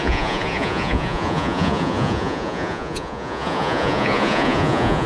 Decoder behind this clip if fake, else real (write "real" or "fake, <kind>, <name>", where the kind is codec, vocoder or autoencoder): fake, vocoder, Vocos